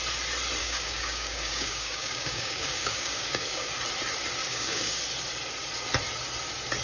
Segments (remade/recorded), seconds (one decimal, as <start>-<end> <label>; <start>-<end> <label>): 0.0-0.6 recorded; 0.6-3.7 remade; 3.7-4.4 recorded; 4.4-5.0 remade; 5.0-6.8 recorded